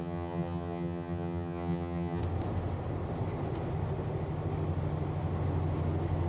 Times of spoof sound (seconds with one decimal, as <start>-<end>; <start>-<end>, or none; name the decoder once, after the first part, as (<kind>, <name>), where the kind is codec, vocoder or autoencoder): 0.0-2.2 (vocoder, HiFi-GAN)